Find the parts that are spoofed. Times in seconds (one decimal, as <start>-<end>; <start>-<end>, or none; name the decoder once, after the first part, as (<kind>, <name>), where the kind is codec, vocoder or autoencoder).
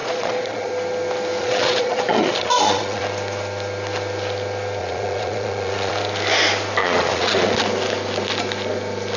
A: 0.0-0.7 (vocoder, Vocos); 1.4-3.0; 4.8-5.9; 6.8-7.5